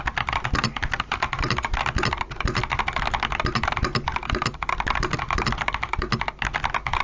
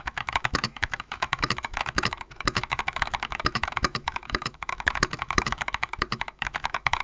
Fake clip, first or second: second